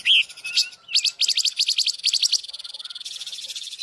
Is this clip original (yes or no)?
yes